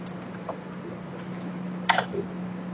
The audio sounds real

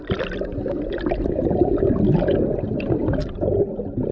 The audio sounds real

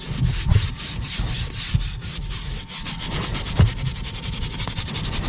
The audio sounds real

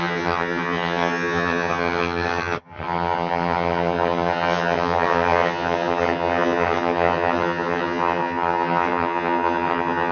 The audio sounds fake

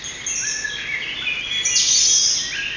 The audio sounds real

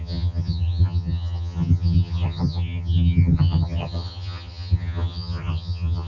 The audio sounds fake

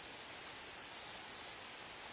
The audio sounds real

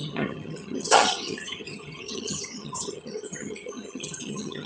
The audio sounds fake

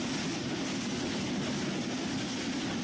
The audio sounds real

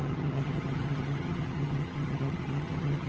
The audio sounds fake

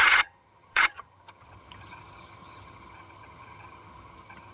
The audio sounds fake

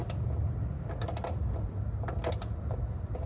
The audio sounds real